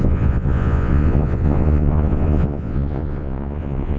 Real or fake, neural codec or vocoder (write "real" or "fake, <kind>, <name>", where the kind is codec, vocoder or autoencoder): fake, vocoder, Vocos